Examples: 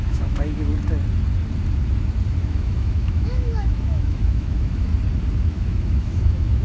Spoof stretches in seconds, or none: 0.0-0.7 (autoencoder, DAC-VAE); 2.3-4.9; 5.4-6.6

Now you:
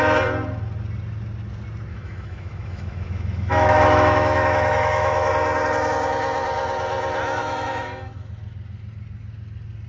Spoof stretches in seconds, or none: 1.9-5.3 (autoencoder, DAC-VAE); 7.4-8.3

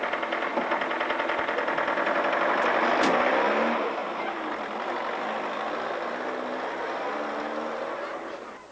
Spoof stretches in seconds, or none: none

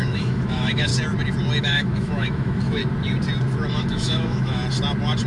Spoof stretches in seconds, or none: 0.0-0.9 (autoencoder, DAC-VAE); 1.6-2.8; 3.7-4.6

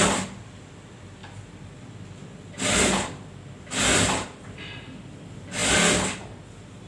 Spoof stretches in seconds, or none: none